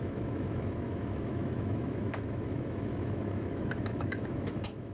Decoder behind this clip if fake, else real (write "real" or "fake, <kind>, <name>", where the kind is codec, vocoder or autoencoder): fake, autoencoder, DAC-VAE